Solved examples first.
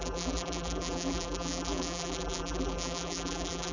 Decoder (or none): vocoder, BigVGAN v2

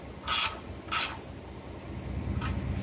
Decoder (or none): none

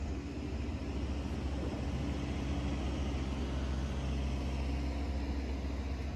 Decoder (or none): none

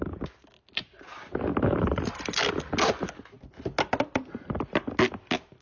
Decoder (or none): none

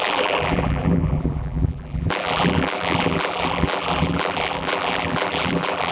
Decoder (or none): vocoder, BigVGAN v2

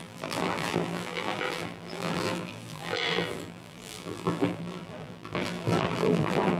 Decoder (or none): vocoder, BigVGAN v2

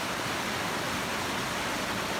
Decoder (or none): none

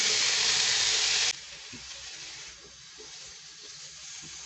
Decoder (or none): none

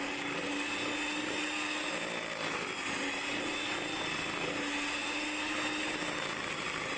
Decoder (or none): none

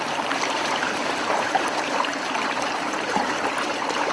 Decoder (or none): vocoder, BigVGAN v2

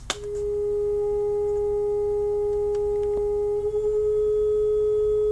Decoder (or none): none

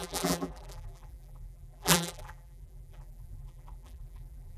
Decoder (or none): vocoder, BigVGAN v2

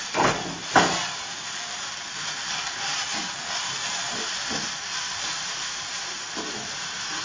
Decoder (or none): vocoder, BigVGAN v2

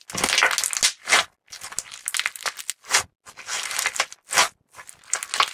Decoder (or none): none